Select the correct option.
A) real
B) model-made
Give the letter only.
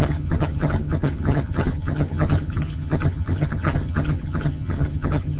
B